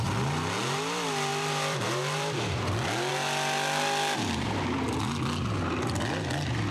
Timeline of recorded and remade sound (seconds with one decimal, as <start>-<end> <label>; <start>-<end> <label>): 0.0-1.3 recorded; 1.3-2.4 remade; 2.4-6.7 recorded